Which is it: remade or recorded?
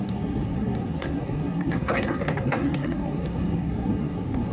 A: remade